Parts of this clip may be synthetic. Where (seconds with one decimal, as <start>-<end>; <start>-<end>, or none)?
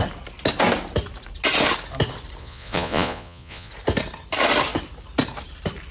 2.4-3.7